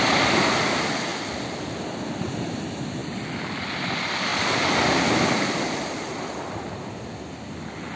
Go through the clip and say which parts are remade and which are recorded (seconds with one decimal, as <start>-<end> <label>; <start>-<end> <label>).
0.0-1.1 recorded; 1.1-1.8 remade; 1.8-3.0 recorded; 3.0-3.9 remade; 3.9-4.3 recorded; 4.3-6.1 remade; 6.1-8.0 recorded